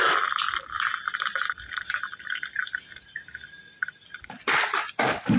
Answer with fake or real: real